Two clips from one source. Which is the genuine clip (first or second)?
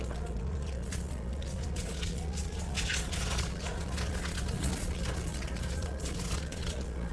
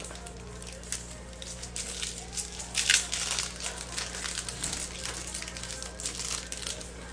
second